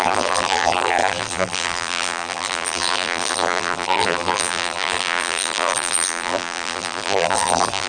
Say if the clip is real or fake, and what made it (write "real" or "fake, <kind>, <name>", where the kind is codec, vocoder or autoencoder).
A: fake, vocoder, BigVGAN v2